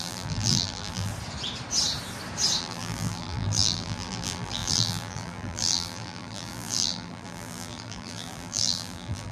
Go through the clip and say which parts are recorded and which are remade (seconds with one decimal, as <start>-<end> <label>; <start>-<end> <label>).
0.0-1.1 remade; 1.1-2.6 recorded; 2.6-9.3 remade